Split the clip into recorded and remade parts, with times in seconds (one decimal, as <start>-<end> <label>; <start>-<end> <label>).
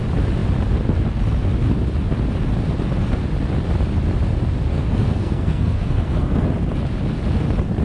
0.0-4.7 recorded; 4.7-6.5 remade; 6.5-7.8 recorded